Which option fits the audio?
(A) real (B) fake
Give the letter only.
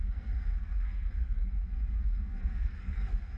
B